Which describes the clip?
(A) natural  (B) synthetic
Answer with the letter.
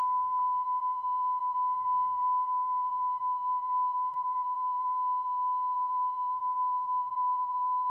B